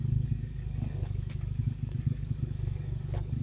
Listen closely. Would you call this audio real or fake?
fake